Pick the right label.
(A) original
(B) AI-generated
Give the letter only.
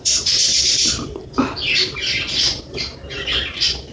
B